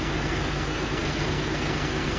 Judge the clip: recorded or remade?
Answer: remade